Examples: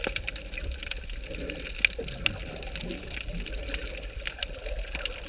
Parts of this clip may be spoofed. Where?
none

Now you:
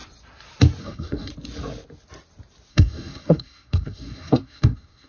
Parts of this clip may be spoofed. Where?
0.8-1.3 (codec, SNAC); 2.7-5.1

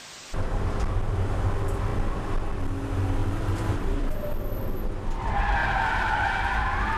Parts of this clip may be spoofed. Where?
3.2-4.1 (vocoder, BigVGAN v2); 5.6-7.0

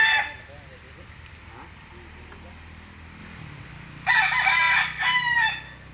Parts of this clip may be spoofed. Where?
0.0-5.9 (vocoder, BigVGAN v2)

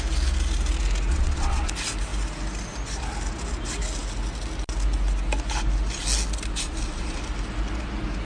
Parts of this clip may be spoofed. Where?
1.1-1.7 (vocoder, WaveNeXt)

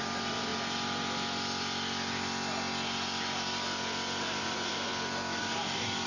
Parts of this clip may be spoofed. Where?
0.0-0.5 (vocoder, BigVGAN v2); 4.2-4.9; 5.4-6.1

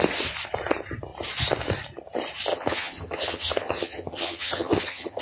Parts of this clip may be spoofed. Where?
2.5-5.2 (vocoder, HiFi-GAN)

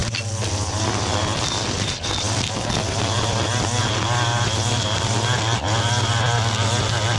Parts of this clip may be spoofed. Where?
none